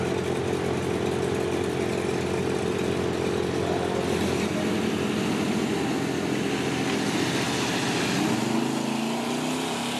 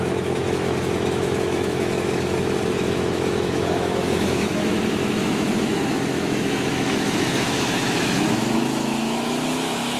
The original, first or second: first